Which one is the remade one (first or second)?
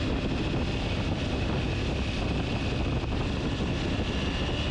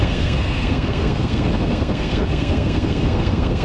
second